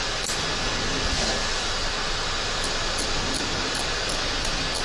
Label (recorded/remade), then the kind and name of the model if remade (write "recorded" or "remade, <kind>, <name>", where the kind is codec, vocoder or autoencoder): recorded